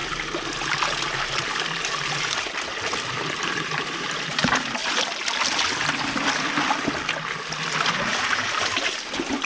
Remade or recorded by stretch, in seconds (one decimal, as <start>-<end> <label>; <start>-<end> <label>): 0.0-3.1 recorded; 3.1-4.8 remade; 4.8-8.1 recorded; 8.1-9.4 remade